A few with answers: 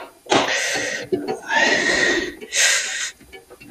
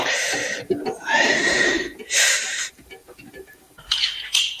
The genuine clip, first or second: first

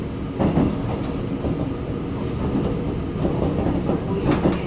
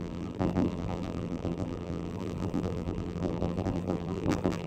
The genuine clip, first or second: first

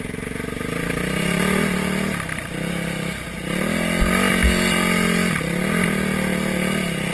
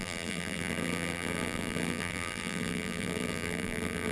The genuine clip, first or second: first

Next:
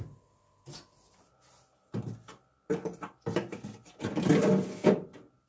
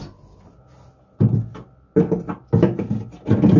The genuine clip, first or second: second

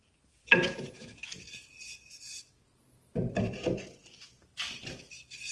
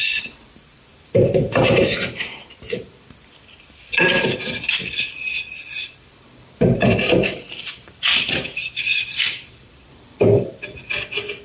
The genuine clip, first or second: first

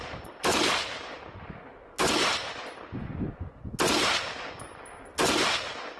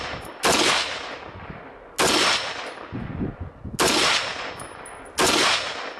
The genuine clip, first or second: second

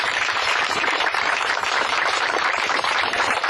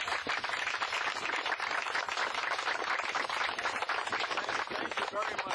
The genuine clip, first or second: second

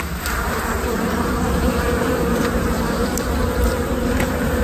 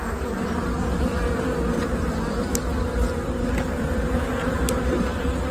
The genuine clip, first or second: second